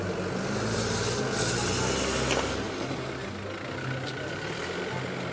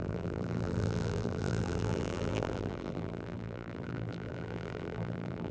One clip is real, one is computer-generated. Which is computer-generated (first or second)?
second